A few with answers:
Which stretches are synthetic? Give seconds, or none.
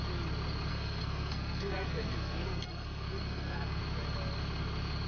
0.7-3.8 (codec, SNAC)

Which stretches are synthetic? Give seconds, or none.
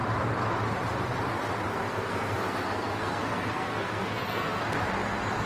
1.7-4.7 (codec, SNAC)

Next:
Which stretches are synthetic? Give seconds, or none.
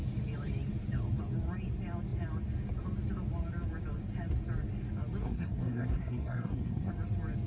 5.2-6.9 (codec, SNAC)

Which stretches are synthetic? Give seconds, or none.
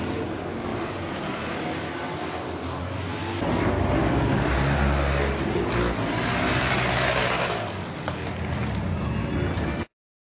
none